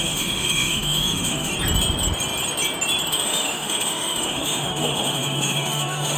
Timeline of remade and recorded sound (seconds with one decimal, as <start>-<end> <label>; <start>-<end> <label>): 0.0-1.5 remade; 1.5-3.1 recorded; 3.1-6.2 remade